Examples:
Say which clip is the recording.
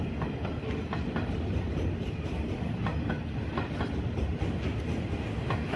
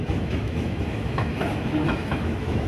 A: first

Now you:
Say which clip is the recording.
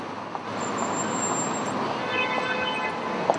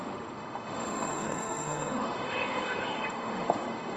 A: first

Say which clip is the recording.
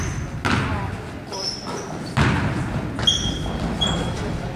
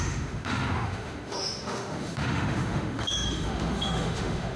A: first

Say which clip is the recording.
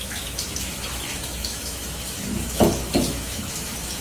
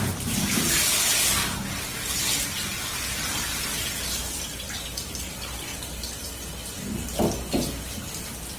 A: second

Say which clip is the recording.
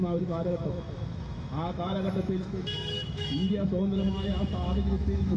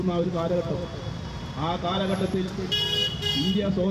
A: second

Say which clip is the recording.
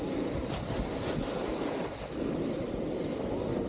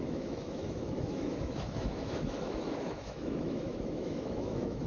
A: first